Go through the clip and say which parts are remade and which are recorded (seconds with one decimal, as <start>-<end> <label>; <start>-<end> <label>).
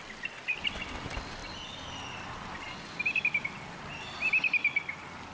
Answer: 0.0-5.3 recorded